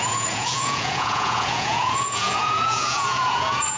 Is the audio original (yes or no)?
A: no